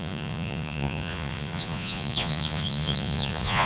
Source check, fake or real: fake